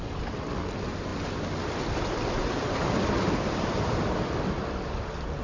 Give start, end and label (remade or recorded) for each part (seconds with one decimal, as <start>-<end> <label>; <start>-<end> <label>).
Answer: 0.0-5.4 recorded